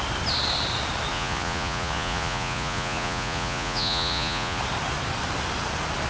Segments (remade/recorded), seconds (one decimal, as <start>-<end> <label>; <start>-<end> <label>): 0.0-1.1 recorded; 1.1-4.6 remade; 4.6-6.1 recorded